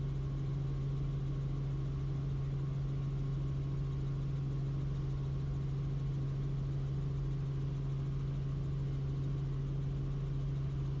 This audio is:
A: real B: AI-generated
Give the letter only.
A